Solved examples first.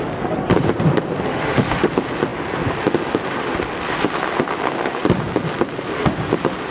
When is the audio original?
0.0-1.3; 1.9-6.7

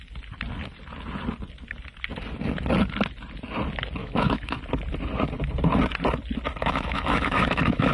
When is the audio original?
0.0-4.0; 4.6-6.6

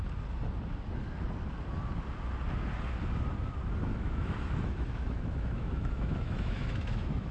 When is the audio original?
0.0-3.9

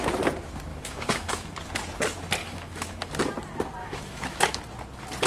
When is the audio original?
0.0-0.7; 1.5-2.4; 3.1-3.8; 4.6-5.3

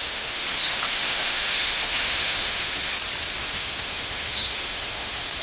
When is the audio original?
2.9-3.4

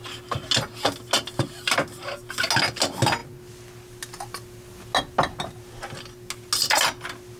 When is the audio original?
0.0-7.4